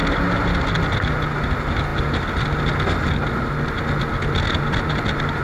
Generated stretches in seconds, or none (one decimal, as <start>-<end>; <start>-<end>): none